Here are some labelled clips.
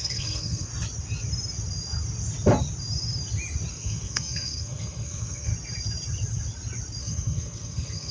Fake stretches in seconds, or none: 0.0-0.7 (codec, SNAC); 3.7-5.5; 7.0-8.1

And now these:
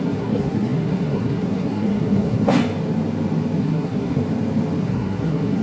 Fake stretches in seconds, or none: 0.0-2.6 (codec, SNAC); 3.6-4.2; 4.8-5.6

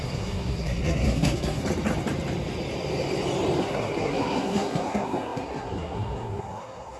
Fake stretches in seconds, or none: 0.0-1.6 (codec, SNAC); 3.6-7.0

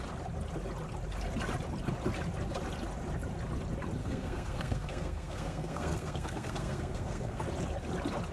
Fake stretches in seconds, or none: 4.0-7.4 (codec, SNAC)

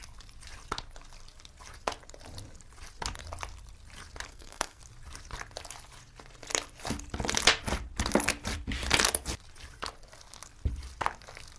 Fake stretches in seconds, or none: 4.3-4.8 (codec, SNAC)

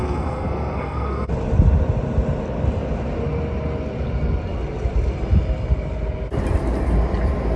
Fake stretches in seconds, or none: 0.0-1.3 (codec, SNAC)

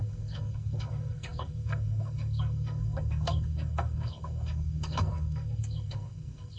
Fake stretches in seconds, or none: 0.0-6.6 (codec, SNAC)

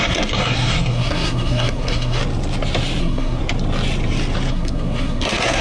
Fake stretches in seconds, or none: 0.0-2.2 (codec, SNAC); 3.0-3.4; 4.5-5.6